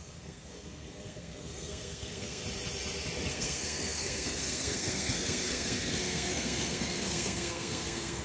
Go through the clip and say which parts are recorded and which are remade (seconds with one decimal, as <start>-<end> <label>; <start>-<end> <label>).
0.0-2.4 remade; 2.4-3.3 recorded; 3.3-8.2 remade